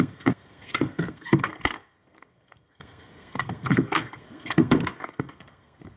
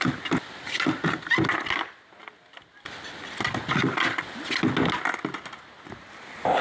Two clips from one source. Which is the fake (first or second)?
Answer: first